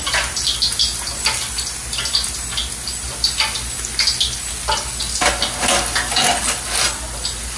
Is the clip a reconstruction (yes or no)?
no